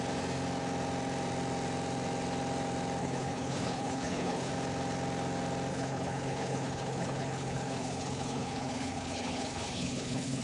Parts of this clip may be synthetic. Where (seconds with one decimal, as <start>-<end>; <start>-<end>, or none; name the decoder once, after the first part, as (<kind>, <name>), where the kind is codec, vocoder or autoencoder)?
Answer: 3.0-4.5 (codec, HILCodec); 5.7-10.4